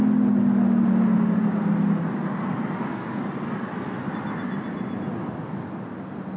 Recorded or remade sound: recorded